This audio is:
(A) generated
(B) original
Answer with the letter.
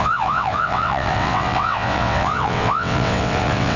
A